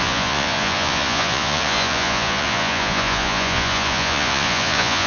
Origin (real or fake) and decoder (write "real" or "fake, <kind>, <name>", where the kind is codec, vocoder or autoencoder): fake, vocoder, Vocos